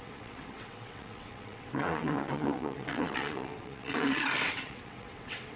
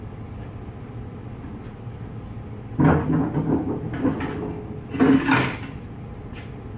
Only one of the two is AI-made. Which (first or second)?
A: first